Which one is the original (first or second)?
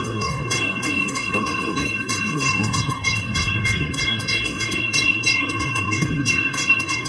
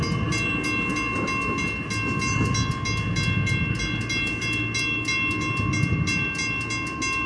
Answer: second